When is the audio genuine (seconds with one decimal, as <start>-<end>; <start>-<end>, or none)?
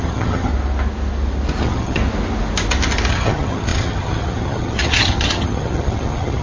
0.5-1.6; 2.0-3.1